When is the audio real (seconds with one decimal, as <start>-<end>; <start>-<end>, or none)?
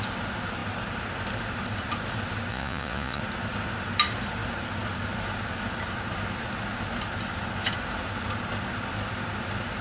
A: 0.0-2.5; 3.2-9.8